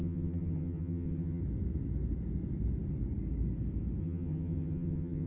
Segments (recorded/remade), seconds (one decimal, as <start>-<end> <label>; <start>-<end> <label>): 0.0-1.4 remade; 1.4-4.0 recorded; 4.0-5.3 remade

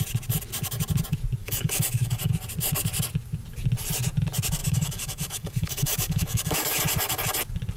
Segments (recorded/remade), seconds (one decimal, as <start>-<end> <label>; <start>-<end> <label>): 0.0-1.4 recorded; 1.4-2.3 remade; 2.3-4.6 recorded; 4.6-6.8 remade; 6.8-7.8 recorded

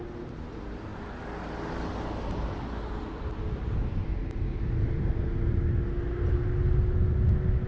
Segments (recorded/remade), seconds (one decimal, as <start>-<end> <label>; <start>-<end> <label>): 0.0-7.7 recorded

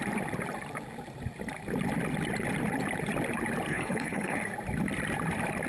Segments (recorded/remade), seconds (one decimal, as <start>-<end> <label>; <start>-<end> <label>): 0.0-3.7 recorded; 3.7-4.4 remade; 4.4-5.7 recorded